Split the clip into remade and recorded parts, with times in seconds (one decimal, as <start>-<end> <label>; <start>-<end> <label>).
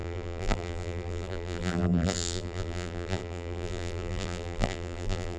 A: 0.0-5.4 remade